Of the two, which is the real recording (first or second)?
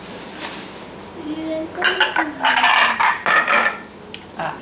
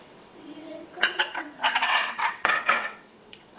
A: first